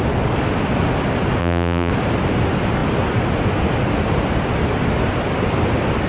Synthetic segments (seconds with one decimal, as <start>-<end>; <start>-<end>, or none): 1.4-1.9